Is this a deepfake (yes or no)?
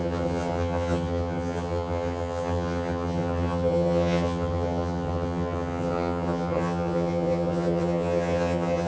yes